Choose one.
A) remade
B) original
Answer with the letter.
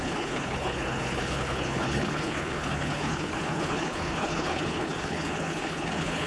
A